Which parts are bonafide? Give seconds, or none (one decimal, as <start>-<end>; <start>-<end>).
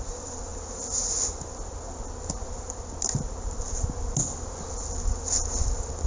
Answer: 0.0-6.1